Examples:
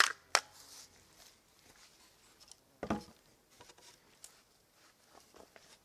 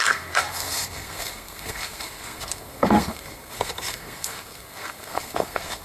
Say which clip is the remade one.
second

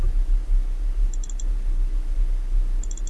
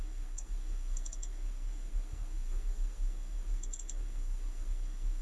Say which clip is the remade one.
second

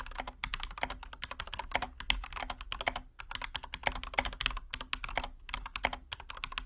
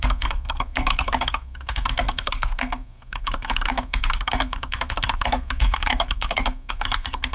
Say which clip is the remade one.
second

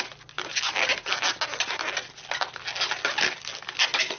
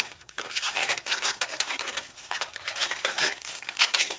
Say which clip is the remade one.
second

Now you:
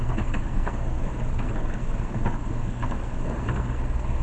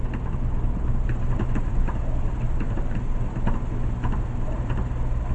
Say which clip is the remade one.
first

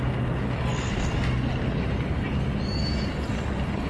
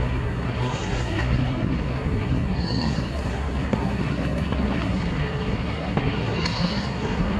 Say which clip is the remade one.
second